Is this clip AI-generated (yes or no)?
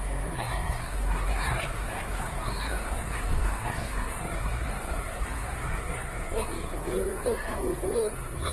yes